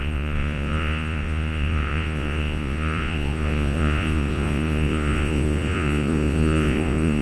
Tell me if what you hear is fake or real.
fake